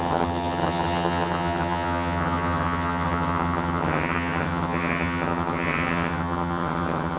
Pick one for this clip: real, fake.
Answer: fake